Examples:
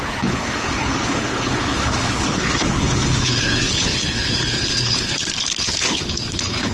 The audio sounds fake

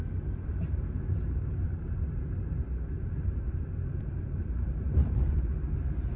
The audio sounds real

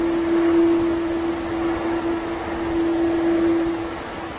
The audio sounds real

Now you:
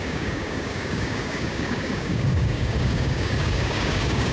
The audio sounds fake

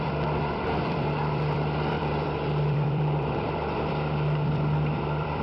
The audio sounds fake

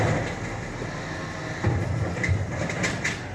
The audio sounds real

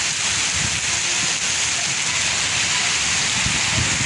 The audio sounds real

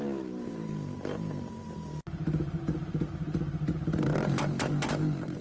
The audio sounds fake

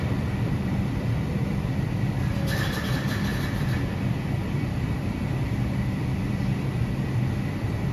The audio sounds fake